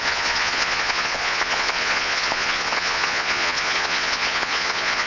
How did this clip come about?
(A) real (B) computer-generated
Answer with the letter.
B